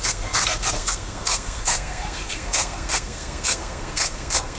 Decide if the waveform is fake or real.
fake